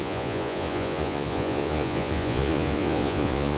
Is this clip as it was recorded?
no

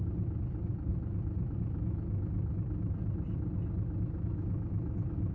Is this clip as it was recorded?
yes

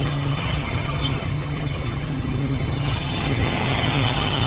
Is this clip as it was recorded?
no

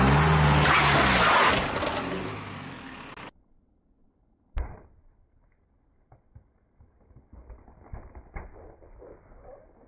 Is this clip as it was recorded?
yes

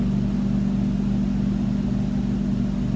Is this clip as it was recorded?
yes